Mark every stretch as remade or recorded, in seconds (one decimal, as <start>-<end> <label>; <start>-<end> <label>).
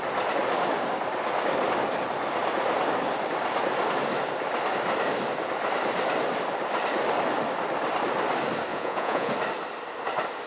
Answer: 0.0-8.7 recorded; 8.7-9.3 remade; 9.3-10.5 recorded